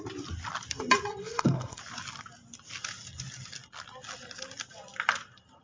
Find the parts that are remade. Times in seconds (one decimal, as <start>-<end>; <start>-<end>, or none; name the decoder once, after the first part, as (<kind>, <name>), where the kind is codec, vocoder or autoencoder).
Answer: 1.2-1.8 (codec, SNAC)